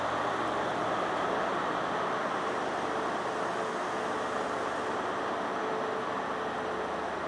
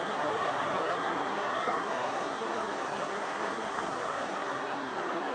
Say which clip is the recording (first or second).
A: first